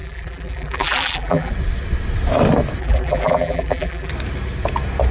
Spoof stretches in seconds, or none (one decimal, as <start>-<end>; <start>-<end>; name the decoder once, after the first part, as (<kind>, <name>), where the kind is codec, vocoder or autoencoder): 0.0-1.5 (vocoder, BigVGAN v2); 2.8-4.1